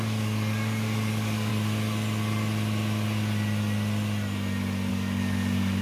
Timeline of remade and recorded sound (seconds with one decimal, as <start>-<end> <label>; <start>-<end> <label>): 0.0-1.5 remade; 1.5-4.9 recorded; 4.9-5.8 remade